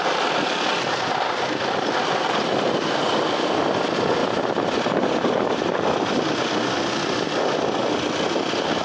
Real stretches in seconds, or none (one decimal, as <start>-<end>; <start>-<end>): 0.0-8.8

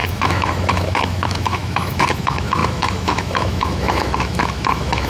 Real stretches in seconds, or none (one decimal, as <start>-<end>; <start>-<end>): none

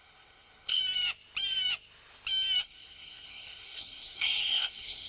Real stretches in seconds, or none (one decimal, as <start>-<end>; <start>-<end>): 0.8-2.6

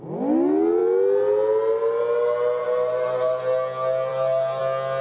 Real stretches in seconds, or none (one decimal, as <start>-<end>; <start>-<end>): 0.0-2.6; 3.4-4.1; 4.6-5.0

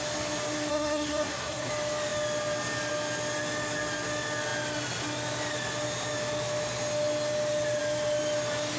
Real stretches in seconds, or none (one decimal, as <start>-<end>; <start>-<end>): 0.0-0.7; 1.7-8.8

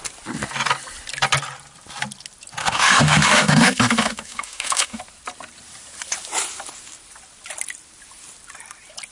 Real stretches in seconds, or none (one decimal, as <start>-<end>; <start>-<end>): 0.0-2.6; 5.0-9.1

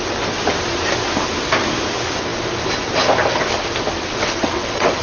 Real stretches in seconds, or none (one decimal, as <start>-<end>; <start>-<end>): 0.0-4.1